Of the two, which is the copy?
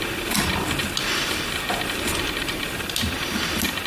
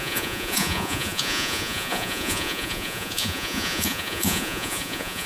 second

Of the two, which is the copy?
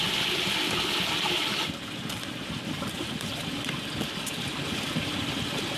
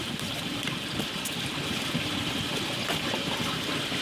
second